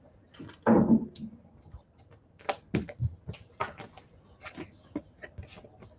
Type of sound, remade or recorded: recorded